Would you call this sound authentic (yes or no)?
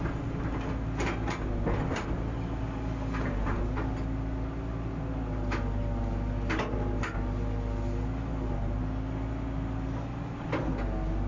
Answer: yes